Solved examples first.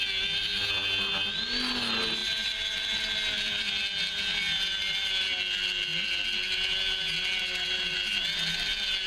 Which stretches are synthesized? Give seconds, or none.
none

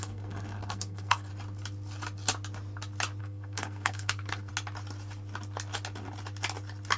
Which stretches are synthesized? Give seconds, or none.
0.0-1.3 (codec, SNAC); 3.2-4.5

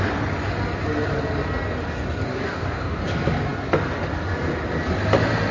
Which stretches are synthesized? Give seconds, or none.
2.3-3.0 (codec, DAC)

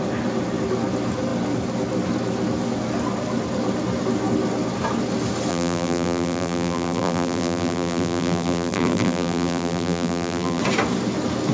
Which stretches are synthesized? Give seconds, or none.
5.5-10.6 (vocoder, BigVGAN v2)